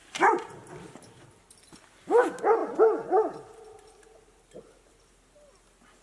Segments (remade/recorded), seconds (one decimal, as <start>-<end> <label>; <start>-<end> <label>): 0.0-6.0 recorded